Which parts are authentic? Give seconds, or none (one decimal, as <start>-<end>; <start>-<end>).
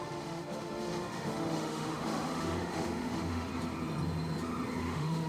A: 3.5-4.8